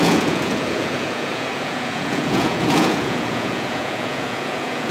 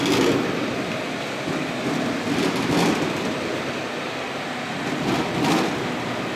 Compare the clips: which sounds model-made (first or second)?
first